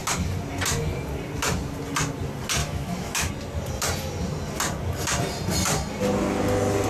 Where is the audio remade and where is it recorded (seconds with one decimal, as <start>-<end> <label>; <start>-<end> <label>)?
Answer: 0.0-2.6 recorded; 2.6-3.3 remade; 3.3-6.9 recorded